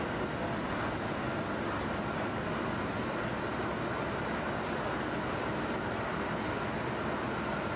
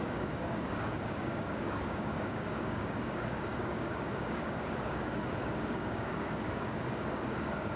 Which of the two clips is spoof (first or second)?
second